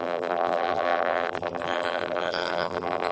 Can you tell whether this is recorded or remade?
remade